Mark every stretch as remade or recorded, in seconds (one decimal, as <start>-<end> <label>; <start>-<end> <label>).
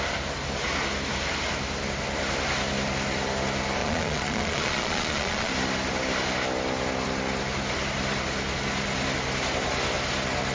0.0-3.8 recorded; 3.8-5.5 remade; 5.5-10.5 recorded